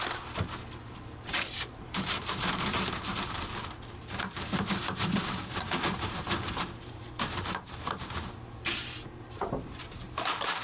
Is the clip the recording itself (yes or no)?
no